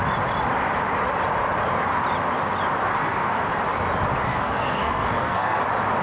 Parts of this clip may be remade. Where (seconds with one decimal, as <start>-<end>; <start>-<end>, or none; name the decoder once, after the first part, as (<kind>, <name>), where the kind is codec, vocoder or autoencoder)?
2.9-3.5 (codec, SNAC); 4.3-5.6